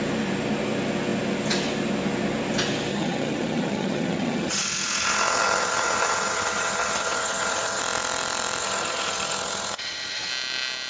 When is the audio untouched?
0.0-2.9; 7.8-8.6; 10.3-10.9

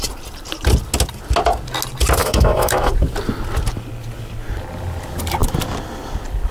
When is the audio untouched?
0.0-2.2; 2.9-6.5

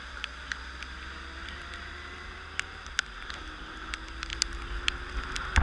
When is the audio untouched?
0.0-5.6

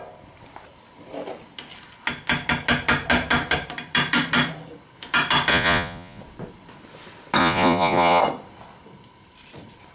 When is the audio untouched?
0.0-5.5; 6.2-7.4; 8.2-9.9

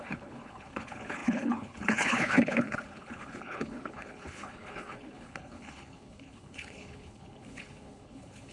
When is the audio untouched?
none

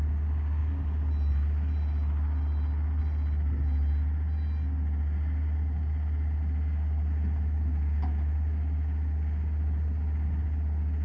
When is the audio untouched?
0.0-11.0

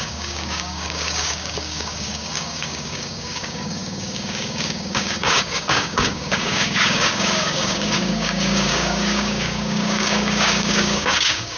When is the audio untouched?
none